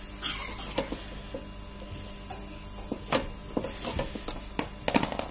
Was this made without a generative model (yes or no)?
yes